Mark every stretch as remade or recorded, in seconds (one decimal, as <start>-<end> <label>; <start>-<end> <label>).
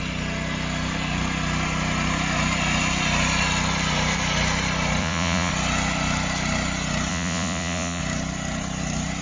0.0-5.0 recorded; 5.0-5.5 remade; 5.5-7.1 recorded; 7.1-8.0 remade; 8.0-9.2 recorded